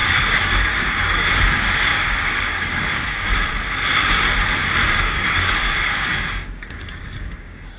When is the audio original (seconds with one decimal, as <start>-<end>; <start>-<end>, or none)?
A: 1.3-1.9; 3.3-4.8